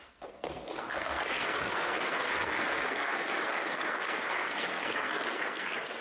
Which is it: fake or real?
fake